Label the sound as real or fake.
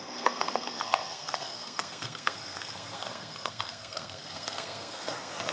fake